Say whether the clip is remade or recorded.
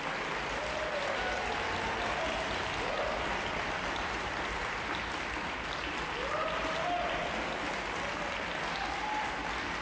recorded